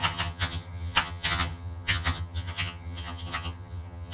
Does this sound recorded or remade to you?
remade